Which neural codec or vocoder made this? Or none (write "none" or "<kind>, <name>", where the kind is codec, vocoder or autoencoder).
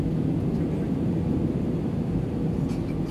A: none